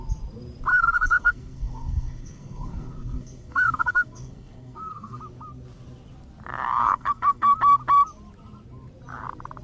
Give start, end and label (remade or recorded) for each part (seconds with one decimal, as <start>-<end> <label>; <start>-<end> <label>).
0.0-0.7 recorded; 0.7-5.2 remade; 5.2-6.8 recorded; 6.8-7.6 remade; 7.6-9.6 recorded